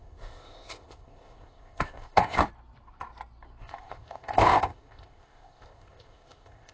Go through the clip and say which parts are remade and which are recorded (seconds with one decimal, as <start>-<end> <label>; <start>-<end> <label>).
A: 0.0-2.4 remade; 2.4-3.6 recorded; 3.6-6.7 remade